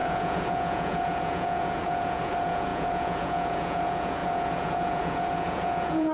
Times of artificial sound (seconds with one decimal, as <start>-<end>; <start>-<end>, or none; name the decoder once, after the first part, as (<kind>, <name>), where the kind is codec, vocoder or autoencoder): 0.0-6.1 (vocoder, Vocos)